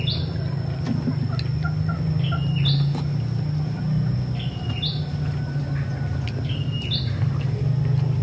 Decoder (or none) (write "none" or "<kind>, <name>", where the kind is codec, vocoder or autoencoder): none